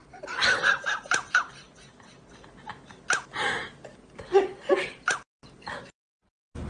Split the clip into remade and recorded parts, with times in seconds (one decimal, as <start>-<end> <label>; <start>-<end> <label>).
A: 0.0-1.5 remade; 1.5-6.7 recorded